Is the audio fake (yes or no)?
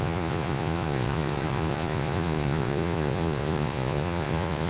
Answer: yes